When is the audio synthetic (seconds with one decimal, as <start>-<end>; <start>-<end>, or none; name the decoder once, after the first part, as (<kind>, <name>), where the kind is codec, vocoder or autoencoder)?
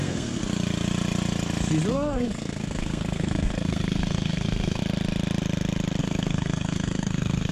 0.0-0.4 (codec, SNAC); 1.9-4.8; 6.0-7.5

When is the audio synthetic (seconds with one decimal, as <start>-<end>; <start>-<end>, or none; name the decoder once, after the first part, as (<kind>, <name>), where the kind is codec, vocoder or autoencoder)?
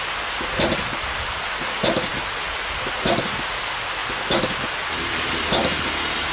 none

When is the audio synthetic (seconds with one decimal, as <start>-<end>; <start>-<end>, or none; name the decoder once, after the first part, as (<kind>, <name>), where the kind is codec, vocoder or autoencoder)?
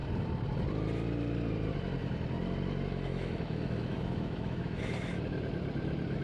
3.1-4.8 (autoencoder, DAC-VAE)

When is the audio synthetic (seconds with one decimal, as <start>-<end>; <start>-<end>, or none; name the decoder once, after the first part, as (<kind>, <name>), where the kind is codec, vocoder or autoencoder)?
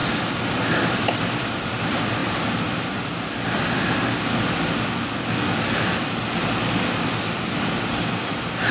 none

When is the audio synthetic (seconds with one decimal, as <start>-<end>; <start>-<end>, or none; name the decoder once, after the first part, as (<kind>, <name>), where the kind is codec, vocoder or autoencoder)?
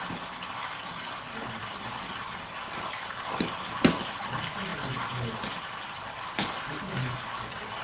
none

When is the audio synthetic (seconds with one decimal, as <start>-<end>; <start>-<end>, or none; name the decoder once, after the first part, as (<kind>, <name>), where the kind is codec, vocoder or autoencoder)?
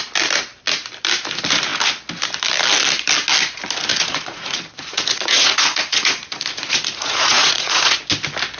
3.9-8.0 (vocoder, Vocos)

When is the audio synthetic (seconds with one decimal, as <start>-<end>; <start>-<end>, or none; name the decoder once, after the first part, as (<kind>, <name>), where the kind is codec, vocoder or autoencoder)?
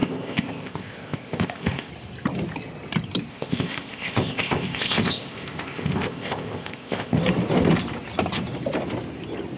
0.0-1.9 (codec, ZipCodec); 3.3-7.2